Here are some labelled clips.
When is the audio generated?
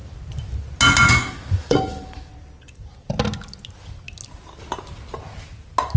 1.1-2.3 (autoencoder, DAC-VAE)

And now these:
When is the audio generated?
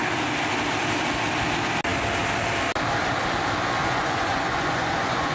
3.8-5.3 (vocoder, Vocos)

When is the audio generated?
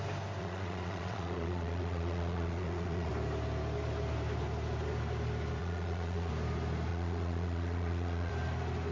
0.4-3.1 (vocoder, Vocos); 5.6-6.3; 6.9-8.3